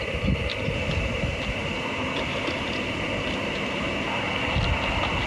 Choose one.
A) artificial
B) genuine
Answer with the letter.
B